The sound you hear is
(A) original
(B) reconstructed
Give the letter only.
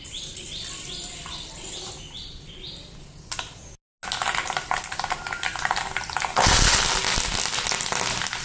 A